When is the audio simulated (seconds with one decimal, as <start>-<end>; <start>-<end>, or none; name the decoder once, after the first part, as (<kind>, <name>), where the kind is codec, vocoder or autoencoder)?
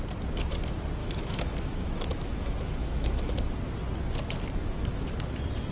1.0-3.5 (autoencoder, DAC-VAE)